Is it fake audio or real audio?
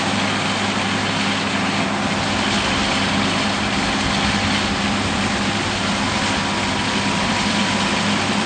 real